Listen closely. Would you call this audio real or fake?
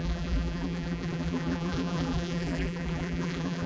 fake